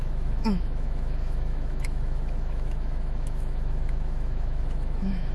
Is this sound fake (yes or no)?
yes